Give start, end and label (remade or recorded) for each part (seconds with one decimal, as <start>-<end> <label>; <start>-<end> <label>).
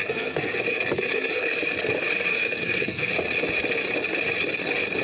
0.0-0.6 remade; 0.6-2.3 recorded; 2.3-3.1 remade; 3.1-5.0 recorded